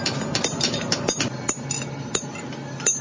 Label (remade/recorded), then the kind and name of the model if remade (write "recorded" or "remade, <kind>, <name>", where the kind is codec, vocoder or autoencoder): recorded